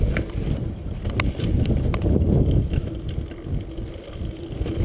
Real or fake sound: real